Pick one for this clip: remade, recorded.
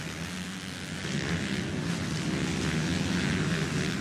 recorded